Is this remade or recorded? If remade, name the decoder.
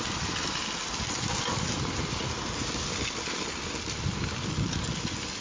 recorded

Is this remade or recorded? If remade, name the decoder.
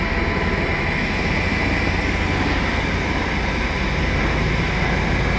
recorded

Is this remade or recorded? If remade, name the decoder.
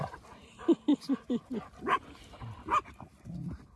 recorded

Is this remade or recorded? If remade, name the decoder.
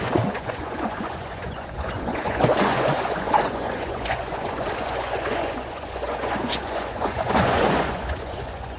remade, vocoder, Vocos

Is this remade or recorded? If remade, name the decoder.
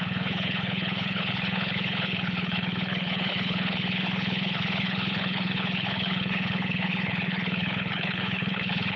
remade, codec, HILCodec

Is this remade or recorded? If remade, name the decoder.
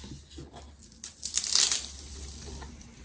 recorded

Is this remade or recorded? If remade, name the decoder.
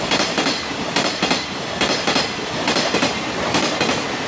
recorded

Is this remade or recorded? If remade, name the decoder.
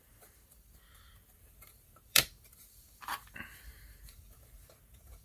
remade, vocoder, BigVGAN v2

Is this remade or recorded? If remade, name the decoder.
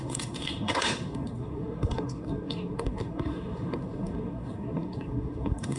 remade, codec, SNAC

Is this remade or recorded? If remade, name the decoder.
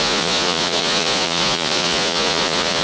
remade, vocoder, Vocos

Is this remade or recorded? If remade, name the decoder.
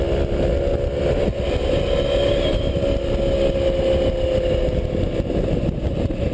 recorded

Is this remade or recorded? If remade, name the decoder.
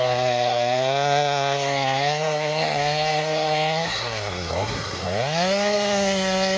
remade, codec, SNAC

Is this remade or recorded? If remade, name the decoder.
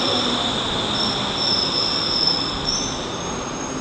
recorded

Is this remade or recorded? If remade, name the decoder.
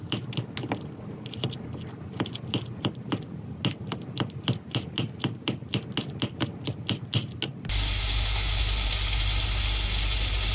recorded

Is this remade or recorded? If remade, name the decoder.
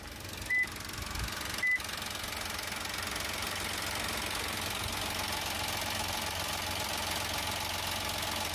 recorded